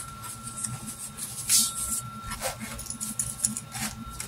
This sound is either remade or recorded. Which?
recorded